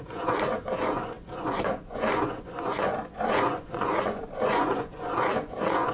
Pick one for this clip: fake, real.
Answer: fake